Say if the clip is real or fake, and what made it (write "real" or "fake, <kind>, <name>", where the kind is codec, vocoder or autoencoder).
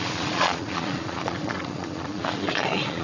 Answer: fake, vocoder, Vocos